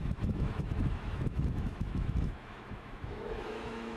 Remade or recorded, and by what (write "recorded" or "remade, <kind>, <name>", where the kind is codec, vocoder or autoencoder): remade, autoencoder, DAC-VAE